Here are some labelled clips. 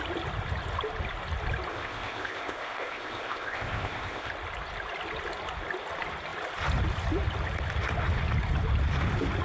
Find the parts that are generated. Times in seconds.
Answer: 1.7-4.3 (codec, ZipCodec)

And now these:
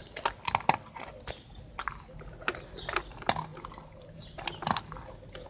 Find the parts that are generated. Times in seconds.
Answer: none

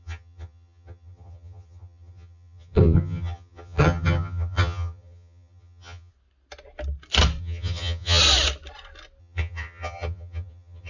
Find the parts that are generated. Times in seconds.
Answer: 0.0-6.1 (vocoder, HiFi-GAN); 7.4-8.2; 9.2-10.9

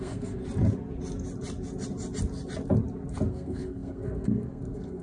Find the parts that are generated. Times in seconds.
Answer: 0.0-0.4 (codec, SNAC); 3.3-5.0